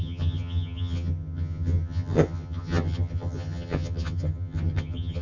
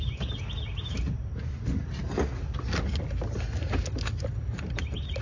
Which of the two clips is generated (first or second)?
first